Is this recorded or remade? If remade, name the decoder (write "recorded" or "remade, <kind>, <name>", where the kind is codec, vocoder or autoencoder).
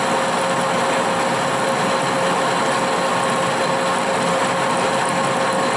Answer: recorded